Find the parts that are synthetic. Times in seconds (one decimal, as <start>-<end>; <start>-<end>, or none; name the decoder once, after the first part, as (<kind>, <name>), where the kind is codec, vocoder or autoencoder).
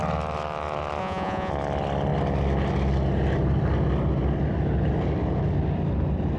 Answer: 1.0-1.5 (vocoder, Vocos)